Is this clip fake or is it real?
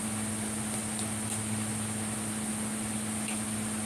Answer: real